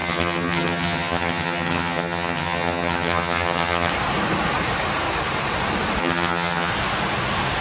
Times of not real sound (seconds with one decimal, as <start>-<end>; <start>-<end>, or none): 0.0-3.9; 6.0-6.7